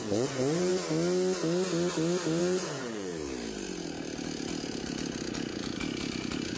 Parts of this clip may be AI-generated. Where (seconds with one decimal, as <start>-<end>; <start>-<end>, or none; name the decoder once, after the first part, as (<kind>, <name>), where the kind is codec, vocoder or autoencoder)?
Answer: 0.0-0.7 (vocoder, Vocos); 2.4-3.1